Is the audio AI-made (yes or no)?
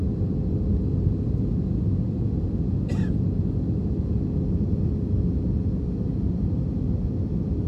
no